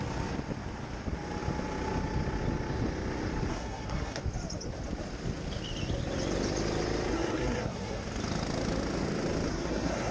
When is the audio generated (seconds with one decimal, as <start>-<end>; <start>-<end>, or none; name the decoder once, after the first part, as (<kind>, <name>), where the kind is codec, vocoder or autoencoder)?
3.5-4.2 (codec, SNAC); 7.1-8.0; 9.5-10.1